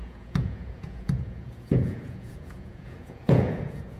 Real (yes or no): no